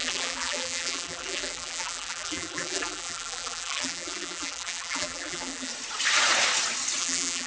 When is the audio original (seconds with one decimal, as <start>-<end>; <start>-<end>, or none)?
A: 5.7-7.0

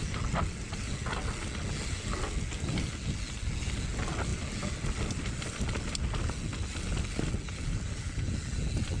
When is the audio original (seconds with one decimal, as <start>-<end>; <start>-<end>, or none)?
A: 0.0-9.0